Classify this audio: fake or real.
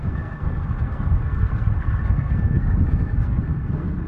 fake